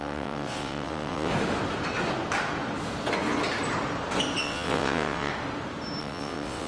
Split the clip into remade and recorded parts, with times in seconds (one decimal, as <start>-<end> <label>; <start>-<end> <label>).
0.0-1.3 remade; 1.3-4.4 recorded; 4.4-5.3 remade; 5.3-6.0 recorded; 6.0-6.7 remade